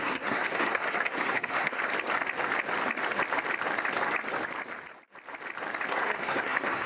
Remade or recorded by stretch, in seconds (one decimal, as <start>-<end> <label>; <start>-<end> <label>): 0.0-1.8 remade; 1.8-5.9 recorded; 5.9-6.9 remade